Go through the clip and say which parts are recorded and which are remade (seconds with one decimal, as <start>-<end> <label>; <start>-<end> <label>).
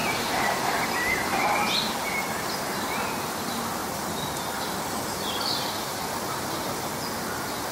0.0-1.8 remade; 1.8-7.7 recorded